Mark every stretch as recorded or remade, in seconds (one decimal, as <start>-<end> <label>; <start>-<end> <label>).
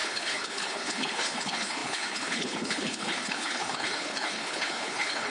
0.0-5.3 remade